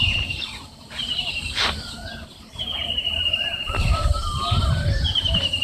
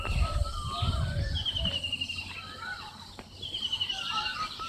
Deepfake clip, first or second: first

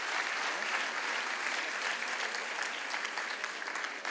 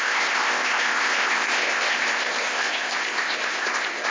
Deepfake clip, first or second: second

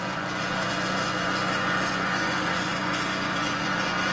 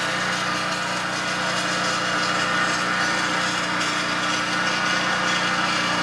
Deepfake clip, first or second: first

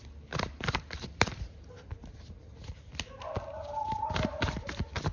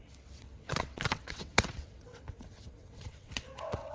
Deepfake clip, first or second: second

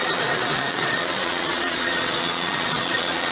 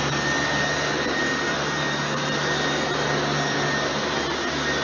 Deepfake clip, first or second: first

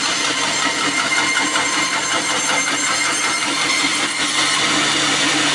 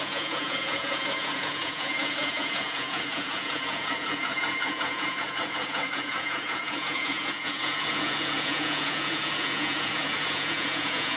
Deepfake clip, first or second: second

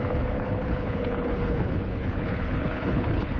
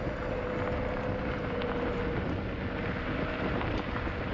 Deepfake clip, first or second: first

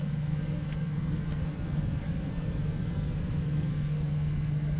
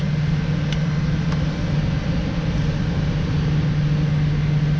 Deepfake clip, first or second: first